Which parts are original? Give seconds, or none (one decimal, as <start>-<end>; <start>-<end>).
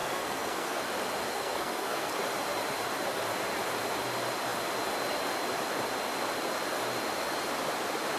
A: 0.8-1.3; 2.1-8.2